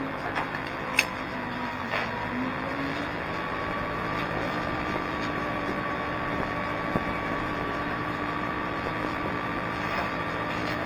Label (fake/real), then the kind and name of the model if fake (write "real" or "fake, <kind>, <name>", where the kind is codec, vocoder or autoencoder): fake, vocoder, BigVGAN v2